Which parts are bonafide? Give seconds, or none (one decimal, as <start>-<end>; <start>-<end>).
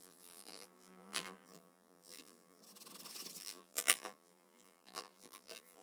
2.6-3.4